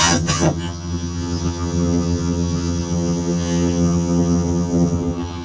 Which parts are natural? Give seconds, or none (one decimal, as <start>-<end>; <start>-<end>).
none